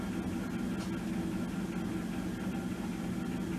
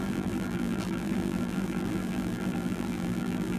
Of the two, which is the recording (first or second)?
first